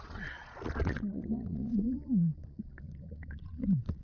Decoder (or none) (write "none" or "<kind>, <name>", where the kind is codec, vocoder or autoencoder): vocoder, Vocos